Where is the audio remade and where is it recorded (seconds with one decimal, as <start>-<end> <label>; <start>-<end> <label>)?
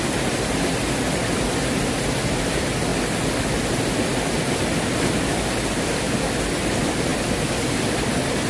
0.0-8.5 recorded